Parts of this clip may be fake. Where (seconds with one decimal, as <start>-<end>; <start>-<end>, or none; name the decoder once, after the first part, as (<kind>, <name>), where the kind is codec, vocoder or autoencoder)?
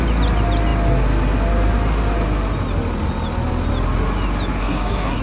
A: 4.6-5.2 (codec, SNAC)